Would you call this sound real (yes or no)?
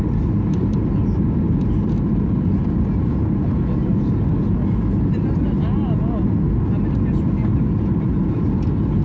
yes